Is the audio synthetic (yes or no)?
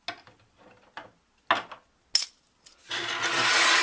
no